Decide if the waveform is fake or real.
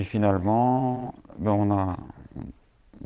fake